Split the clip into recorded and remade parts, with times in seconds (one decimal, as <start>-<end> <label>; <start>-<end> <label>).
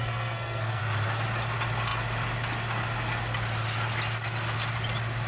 0.0-0.8 remade; 0.8-5.3 recorded